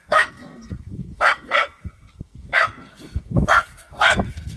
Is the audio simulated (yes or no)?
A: yes